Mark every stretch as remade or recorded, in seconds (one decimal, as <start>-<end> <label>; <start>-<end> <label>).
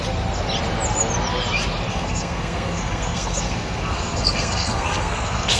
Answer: 0.0-1.9 recorded; 1.9-5.6 remade